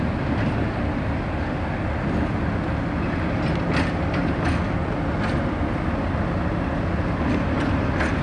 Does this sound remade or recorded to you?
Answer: recorded